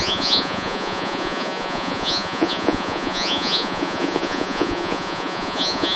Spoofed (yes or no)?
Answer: yes